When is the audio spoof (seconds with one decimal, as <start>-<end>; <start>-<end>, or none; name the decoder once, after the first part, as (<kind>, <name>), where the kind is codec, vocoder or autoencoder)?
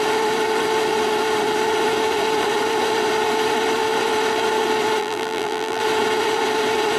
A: 5.0-5.8 (vocoder, BigVGAN v2)